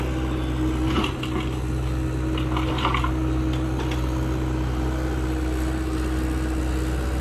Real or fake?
real